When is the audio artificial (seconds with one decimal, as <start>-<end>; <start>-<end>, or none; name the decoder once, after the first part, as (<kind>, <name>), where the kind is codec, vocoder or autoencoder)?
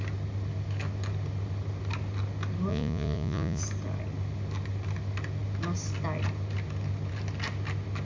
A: 2.7-3.6 (vocoder, Vocos)